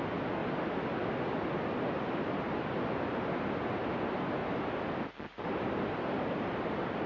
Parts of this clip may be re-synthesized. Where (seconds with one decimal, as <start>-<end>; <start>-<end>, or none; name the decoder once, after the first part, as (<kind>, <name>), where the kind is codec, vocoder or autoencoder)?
none